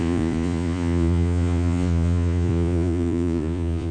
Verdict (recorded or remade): remade